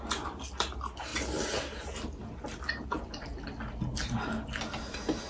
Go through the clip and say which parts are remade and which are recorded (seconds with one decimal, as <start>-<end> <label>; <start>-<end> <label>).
0.0-5.3 recorded